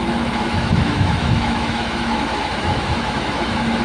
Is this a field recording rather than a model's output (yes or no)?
no